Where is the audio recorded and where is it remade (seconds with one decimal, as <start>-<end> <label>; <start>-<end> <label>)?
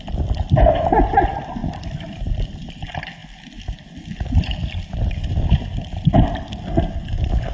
0.0-1.6 recorded; 1.6-2.7 remade; 2.7-7.5 recorded